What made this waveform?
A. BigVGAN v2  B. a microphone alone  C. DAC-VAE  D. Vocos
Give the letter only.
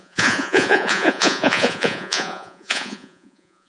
D